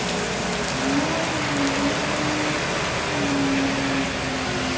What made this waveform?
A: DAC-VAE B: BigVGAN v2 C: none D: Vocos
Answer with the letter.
C